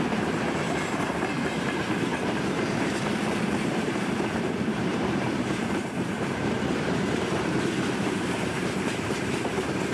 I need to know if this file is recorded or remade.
remade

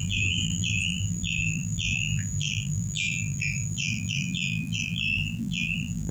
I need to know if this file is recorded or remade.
remade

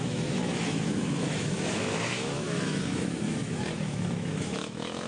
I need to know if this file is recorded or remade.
remade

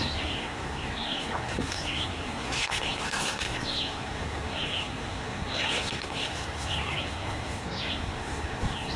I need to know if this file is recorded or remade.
remade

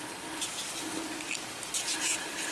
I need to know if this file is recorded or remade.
recorded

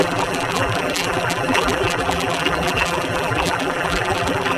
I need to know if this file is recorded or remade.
remade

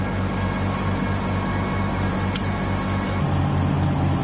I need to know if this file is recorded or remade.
recorded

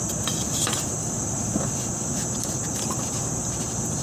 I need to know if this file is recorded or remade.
recorded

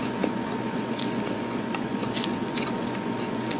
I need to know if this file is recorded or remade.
remade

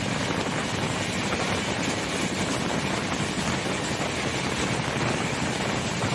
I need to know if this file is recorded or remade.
recorded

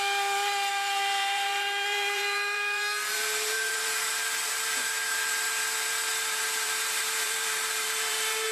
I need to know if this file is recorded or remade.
remade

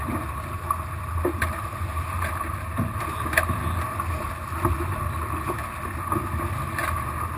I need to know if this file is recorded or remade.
recorded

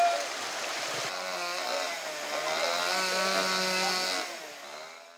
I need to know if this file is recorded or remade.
recorded